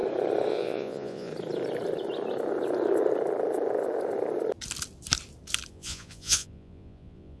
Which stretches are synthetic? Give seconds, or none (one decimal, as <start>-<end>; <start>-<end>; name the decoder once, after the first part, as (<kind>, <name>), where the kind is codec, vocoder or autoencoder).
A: 0.5-1.3 (vocoder, Vocos); 5.7-7.4